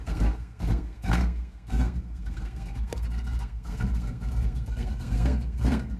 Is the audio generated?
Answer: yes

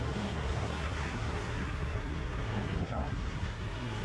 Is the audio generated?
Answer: yes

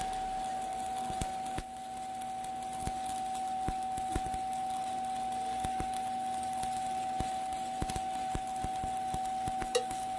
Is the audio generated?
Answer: no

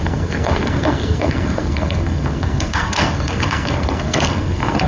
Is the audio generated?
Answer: yes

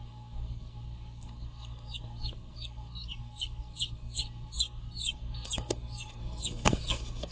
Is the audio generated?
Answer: yes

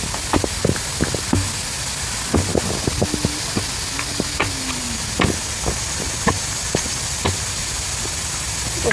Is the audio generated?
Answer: no